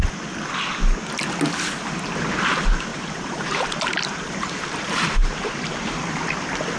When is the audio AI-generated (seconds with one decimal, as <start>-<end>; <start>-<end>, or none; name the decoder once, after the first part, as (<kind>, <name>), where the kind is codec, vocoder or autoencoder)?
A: 2.9-5.7 (vocoder, BigVGAN v2)